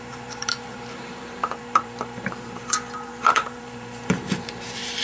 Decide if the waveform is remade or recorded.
remade